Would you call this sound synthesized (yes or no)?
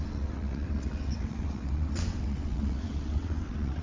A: yes